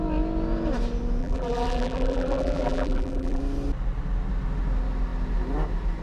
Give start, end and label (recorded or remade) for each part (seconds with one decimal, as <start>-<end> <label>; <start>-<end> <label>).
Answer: 0.0-1.2 recorded; 1.2-3.4 remade; 3.4-6.0 recorded